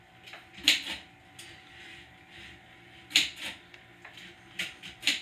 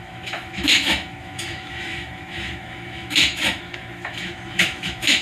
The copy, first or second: second